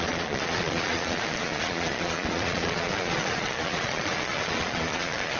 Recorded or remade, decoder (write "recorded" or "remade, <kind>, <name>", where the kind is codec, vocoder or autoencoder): remade, vocoder, Vocos